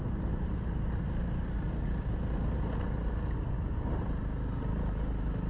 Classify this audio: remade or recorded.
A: recorded